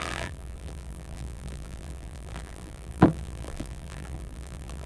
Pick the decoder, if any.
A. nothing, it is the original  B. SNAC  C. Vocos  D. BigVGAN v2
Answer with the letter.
D